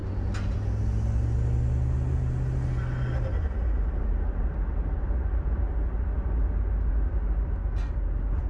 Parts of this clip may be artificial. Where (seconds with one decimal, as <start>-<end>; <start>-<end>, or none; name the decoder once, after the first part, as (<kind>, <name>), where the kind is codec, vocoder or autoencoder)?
none